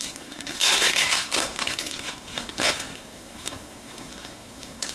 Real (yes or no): no